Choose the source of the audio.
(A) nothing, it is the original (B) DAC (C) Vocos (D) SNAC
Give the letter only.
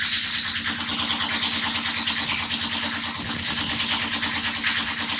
A